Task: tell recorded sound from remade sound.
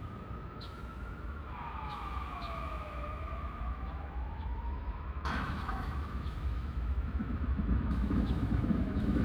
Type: remade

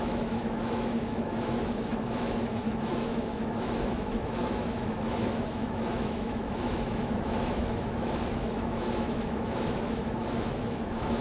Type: remade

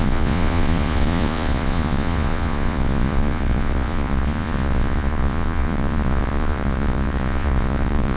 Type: remade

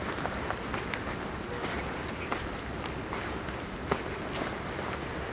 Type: recorded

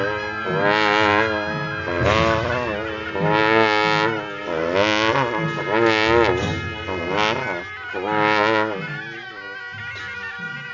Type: recorded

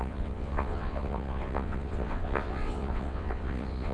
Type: remade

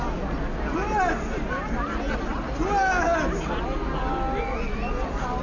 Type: recorded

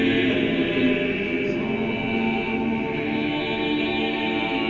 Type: recorded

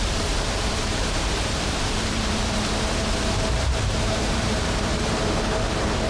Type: remade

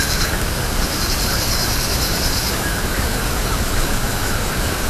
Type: remade